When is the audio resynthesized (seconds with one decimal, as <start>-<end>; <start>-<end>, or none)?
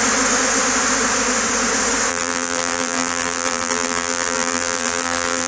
2.1-5.5